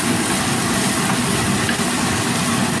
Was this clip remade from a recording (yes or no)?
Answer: no